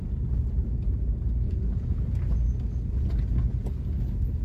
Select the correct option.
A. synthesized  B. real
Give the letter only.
B